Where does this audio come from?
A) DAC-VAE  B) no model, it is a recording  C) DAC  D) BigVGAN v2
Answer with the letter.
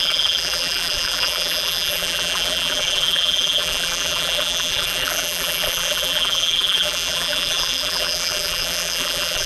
D